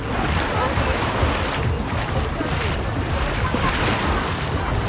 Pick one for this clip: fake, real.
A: real